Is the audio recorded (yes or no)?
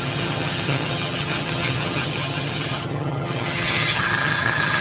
no